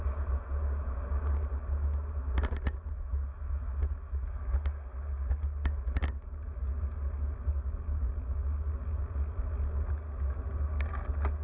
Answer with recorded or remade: recorded